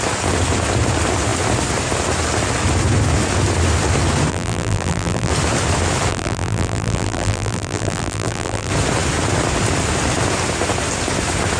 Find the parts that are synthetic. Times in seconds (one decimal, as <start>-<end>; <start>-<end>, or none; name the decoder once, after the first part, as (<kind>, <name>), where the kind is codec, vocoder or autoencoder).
4.3-5.3 (vocoder, BigVGAN v2); 6.1-8.7